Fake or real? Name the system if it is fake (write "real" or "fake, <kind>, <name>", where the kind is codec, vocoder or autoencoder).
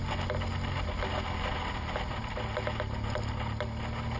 real